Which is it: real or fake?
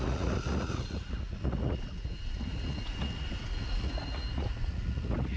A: fake